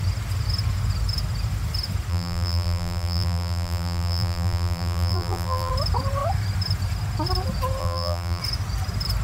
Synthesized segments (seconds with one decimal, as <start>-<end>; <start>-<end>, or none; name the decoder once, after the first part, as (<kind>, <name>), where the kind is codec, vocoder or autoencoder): 2.1-5.7 (vocoder, BigVGAN v2); 7.8-8.4